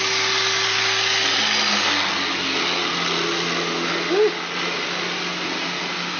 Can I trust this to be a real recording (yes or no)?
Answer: yes